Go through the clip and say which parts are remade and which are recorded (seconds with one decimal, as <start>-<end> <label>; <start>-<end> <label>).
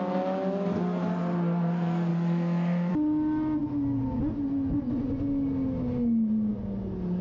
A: 0.0-2.1 recorded; 2.1-2.9 remade; 2.9-7.2 recorded